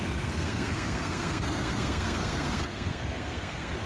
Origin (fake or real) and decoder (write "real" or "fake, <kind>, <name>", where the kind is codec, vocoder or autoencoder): fake, codec, SNAC